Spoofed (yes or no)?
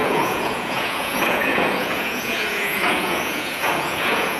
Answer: yes